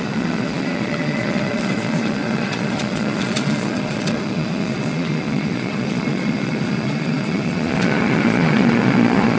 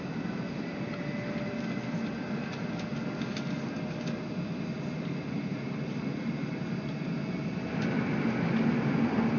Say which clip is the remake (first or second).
first